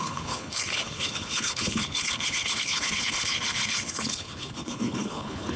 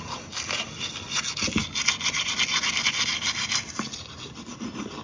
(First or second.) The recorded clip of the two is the second